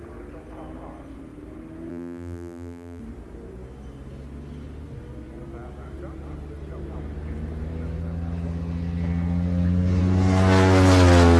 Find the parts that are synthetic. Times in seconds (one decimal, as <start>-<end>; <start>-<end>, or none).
1.9-3.0